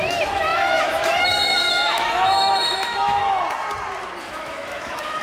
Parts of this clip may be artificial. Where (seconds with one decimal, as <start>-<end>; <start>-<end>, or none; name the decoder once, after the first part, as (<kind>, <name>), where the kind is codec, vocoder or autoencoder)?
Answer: 0.0-3.2 (autoencoder, DAC-VAE); 4.2-5.2